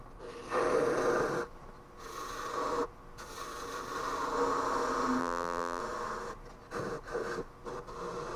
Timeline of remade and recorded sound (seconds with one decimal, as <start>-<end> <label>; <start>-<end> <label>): 0.0-5.2 recorded; 5.2-5.8 remade; 5.8-8.4 recorded